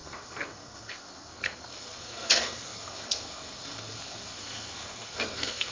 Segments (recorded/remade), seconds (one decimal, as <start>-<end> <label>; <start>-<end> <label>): 0.0-5.7 remade